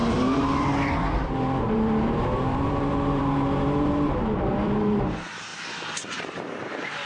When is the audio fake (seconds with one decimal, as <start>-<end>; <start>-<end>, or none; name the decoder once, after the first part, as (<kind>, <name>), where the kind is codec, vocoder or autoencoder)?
0.0-5.5 (vocoder, BigVGAN v2); 6.2-7.1